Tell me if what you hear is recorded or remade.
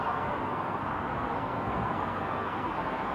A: remade